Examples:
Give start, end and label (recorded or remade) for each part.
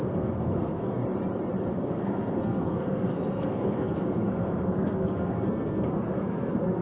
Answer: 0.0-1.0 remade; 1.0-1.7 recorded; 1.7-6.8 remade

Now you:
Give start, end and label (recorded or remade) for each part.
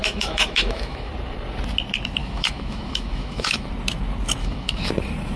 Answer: 0.0-1.1 remade; 1.1-2.2 recorded; 2.2-3.7 remade; 3.7-4.4 recorded; 4.4-4.9 remade; 4.9-5.4 recorded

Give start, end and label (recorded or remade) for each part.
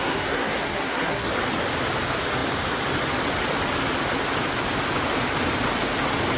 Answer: 0.0-1.3 remade; 1.3-6.4 recorded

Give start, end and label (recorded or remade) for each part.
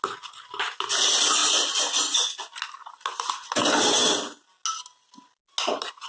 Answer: 0.0-6.1 recorded